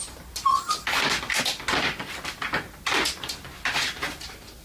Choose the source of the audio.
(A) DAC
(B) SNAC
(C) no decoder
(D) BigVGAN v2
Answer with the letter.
C